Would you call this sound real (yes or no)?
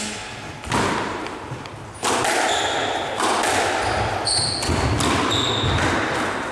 yes